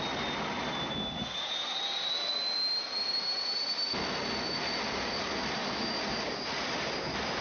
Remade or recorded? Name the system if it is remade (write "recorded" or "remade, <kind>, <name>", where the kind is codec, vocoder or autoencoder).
recorded